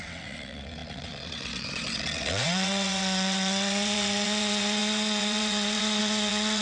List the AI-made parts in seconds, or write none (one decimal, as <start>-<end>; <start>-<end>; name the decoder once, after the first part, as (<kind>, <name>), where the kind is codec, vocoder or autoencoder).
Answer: 0.0-6.6 (vocoder, WaveNeXt)